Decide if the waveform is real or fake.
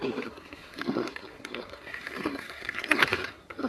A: fake